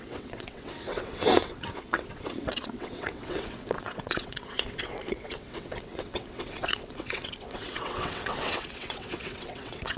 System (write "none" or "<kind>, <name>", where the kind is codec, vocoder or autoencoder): vocoder, WaveNeXt